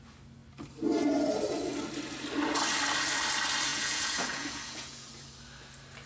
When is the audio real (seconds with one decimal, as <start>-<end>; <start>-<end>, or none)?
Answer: 0.0-3.7; 5.1-6.1